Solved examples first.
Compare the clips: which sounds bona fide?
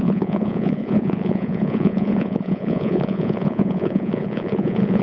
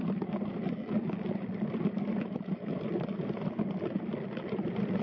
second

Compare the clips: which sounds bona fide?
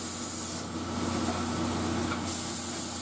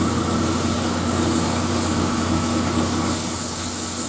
first